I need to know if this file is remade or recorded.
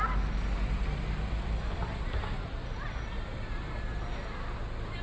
recorded